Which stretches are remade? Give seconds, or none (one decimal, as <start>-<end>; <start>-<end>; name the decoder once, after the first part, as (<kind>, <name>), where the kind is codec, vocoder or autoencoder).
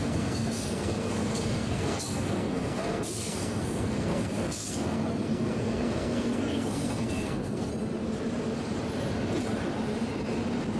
0.0-7.7 (codec, SNAC)